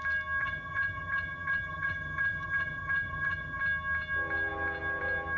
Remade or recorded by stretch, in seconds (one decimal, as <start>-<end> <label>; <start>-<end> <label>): 0.0-0.4 recorded; 0.4-3.6 remade; 3.6-5.4 recorded